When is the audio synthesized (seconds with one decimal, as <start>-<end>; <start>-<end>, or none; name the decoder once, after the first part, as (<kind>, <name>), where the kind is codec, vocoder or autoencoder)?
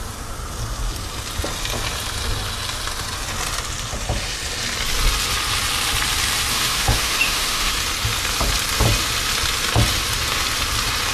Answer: 6.5-7.7 (autoencoder, DAC-VAE)